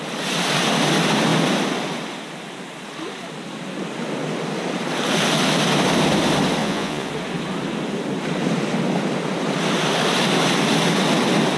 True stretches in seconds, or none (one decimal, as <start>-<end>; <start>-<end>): 0.0-6.6; 7.1-11.6

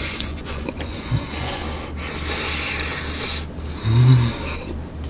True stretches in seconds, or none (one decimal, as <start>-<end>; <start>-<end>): 1.6-5.1

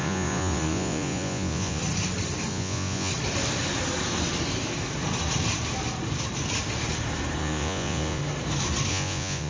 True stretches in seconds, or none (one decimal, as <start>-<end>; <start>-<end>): 1.8-2.5; 3.1-7.4; 8.2-8.9

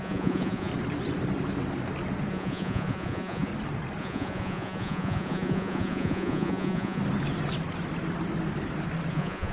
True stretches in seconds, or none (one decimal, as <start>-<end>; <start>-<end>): 0.7-2.3; 3.5-4.0; 7.0-9.1

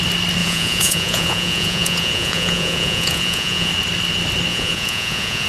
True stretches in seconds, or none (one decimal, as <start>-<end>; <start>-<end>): 0.0-0.4; 3.7-4.5

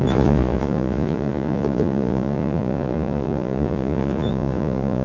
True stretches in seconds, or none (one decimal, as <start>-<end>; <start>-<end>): none